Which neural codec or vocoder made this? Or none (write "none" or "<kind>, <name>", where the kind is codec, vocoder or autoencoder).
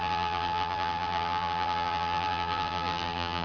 vocoder, BigVGAN v2